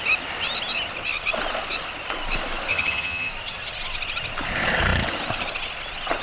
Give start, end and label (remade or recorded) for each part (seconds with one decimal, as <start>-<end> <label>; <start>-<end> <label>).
0.0-2.7 recorded; 2.7-3.3 remade; 3.3-6.2 recorded